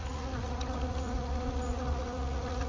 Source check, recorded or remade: remade